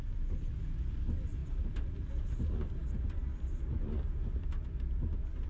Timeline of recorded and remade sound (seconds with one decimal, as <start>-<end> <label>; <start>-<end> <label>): 0.0-5.5 recorded